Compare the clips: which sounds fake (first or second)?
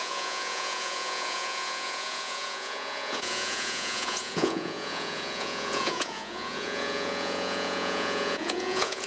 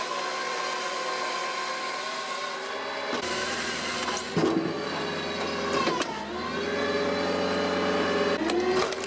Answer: first